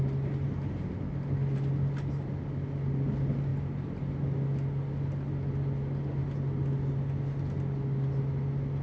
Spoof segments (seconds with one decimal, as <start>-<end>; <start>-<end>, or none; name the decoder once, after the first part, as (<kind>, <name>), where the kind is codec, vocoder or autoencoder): none